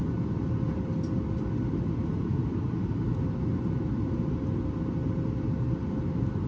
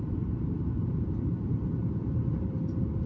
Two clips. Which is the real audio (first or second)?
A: first